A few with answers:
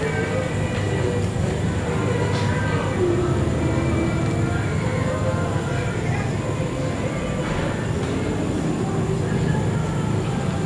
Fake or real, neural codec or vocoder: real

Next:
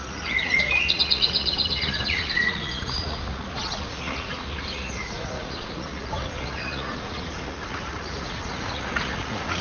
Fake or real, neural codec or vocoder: fake, vocoder, Vocos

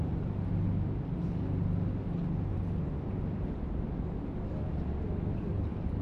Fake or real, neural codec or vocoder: real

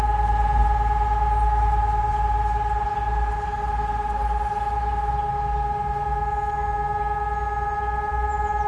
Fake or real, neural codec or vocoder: real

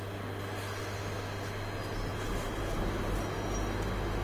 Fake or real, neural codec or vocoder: real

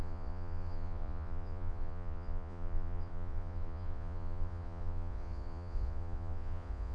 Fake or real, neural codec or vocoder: fake, vocoder, Vocos